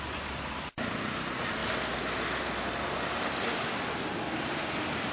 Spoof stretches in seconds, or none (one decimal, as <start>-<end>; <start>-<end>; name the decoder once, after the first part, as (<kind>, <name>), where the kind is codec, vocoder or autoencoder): none